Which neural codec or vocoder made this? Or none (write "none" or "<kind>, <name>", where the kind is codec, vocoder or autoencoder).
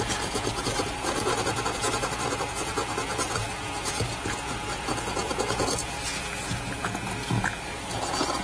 vocoder, Vocos